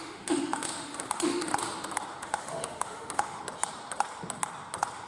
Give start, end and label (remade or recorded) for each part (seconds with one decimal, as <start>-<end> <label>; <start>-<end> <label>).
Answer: 0.0-1.5 remade; 1.5-2.2 recorded; 2.2-3.4 remade; 3.4-5.1 recorded